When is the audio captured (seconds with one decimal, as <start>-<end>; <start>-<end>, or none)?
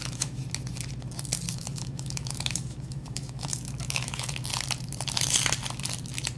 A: 0.4-1.5; 4.5-6.4